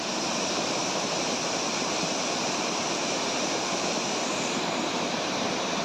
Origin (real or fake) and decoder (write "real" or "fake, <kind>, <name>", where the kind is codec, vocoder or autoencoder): fake, vocoder, BigVGAN v2